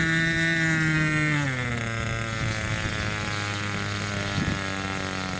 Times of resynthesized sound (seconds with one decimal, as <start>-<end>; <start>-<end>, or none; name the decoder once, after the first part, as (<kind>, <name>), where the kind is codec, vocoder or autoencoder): none